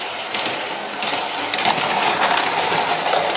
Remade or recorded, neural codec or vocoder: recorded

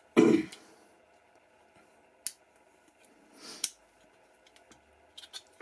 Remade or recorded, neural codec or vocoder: recorded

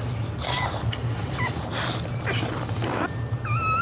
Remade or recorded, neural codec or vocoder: recorded